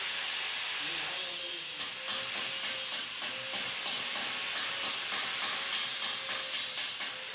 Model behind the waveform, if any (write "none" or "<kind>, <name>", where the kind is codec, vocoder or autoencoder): none